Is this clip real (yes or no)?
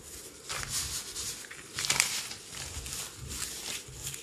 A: yes